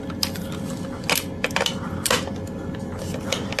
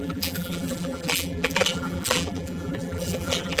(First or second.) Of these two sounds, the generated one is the second